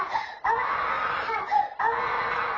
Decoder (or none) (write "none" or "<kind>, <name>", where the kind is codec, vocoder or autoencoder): none